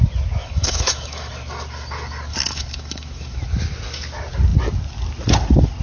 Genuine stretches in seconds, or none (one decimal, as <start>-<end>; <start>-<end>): 0.0-0.4; 1.3-2.3; 3.4-5.8